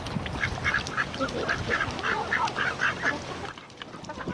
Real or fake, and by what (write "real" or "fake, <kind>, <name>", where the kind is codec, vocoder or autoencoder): real